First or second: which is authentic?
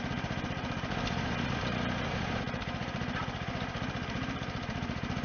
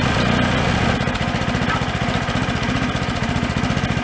second